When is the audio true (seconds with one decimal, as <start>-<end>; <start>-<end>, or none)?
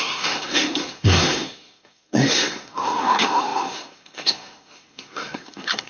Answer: none